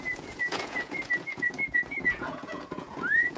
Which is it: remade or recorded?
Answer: remade